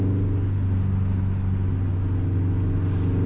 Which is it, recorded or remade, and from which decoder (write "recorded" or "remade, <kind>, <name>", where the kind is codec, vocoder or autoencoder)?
recorded